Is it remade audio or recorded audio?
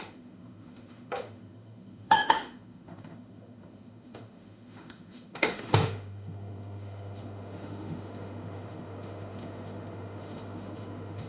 remade